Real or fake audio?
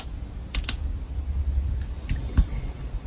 real